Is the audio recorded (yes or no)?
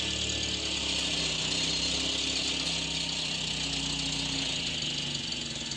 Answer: yes